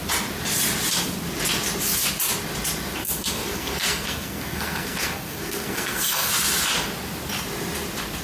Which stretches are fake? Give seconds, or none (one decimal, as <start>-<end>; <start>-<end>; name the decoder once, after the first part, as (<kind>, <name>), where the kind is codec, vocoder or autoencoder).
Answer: 3.0-6.3 (codec, SNAC)